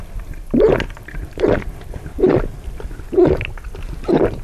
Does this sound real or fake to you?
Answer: real